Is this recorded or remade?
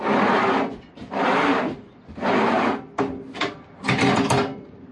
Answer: recorded